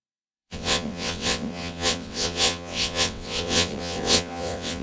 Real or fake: fake